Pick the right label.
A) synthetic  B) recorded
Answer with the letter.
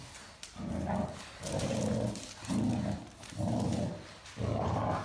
B